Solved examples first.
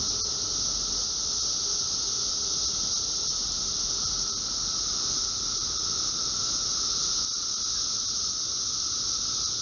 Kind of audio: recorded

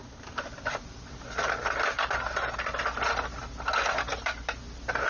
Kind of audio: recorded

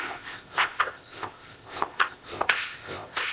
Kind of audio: remade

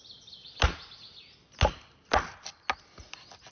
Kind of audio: recorded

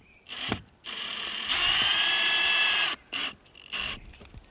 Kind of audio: recorded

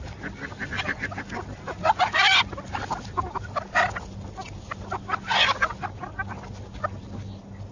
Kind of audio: recorded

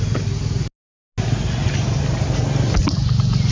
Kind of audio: recorded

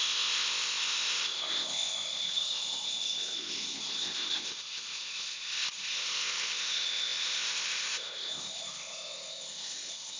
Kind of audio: remade